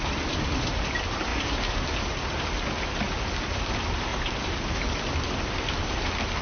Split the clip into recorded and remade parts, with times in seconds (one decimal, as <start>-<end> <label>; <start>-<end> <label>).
0.0-6.4 recorded